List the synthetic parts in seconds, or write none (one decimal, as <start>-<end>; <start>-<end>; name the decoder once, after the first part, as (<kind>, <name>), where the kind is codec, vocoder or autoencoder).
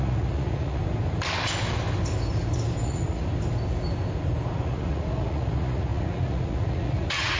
0.0-0.8 (vocoder, Vocos); 2.8-3.2; 4.5-7.4